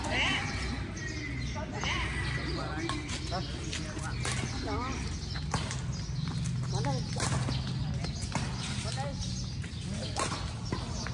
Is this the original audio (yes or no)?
yes